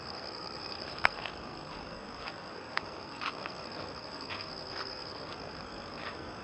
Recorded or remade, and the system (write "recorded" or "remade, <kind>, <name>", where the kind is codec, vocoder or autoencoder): remade, codec, SNAC